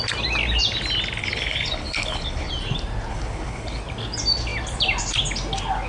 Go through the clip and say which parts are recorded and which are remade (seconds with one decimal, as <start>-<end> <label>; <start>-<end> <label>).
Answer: 0.0-1.2 recorded; 1.2-2.5 remade; 2.5-3.1 recorded; 3.1-3.8 remade; 3.8-5.9 recorded